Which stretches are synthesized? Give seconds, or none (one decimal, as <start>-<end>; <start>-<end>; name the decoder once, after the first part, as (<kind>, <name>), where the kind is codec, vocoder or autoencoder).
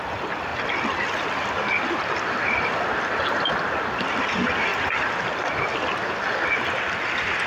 none